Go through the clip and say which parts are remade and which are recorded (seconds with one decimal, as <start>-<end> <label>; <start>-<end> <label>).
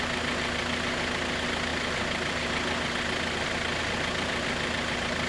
0.0-5.3 recorded